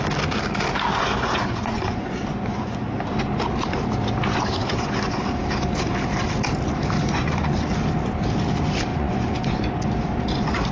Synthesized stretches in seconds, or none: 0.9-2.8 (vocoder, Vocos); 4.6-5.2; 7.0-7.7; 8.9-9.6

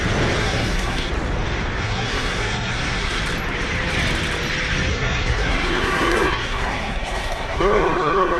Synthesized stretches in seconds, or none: 0.4-1.1 (codec, SNAC); 1.8-3.2; 4.9-8.4

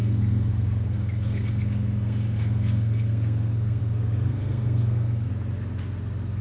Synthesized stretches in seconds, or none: 0.0-5.3 (codec, SNAC)

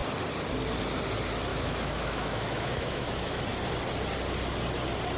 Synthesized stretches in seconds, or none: 1.5-3.4 (autoencoder, DAC-VAE)

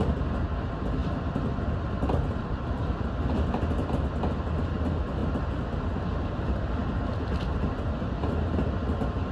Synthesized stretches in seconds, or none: none

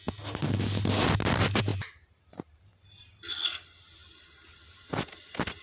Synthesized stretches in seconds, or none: 1.7-2.6 (vocoder, BigVGAN v2)

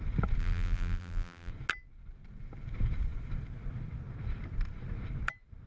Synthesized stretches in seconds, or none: 0.4-1.5 (vocoder, BigVGAN v2)

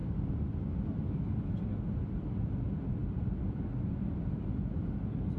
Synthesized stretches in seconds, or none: 0.0-1.0 (vocoder, BigVGAN v2); 3.0-4.5